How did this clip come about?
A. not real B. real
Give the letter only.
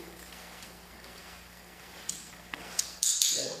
A